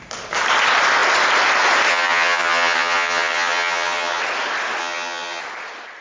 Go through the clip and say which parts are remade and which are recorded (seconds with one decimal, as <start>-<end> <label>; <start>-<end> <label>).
0.0-1.9 recorded; 1.9-4.2 remade; 4.2-4.8 recorded; 4.8-5.4 remade; 5.4-6.0 recorded